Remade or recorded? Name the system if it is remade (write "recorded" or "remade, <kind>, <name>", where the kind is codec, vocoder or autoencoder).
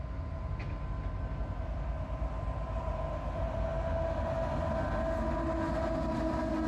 recorded